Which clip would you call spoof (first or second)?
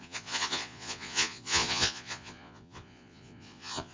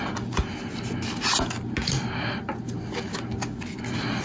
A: first